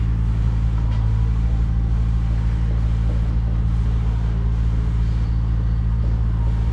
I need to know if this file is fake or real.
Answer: fake